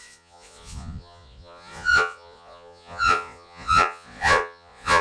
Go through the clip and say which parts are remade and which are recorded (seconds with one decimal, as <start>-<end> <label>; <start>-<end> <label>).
0.0-5.0 remade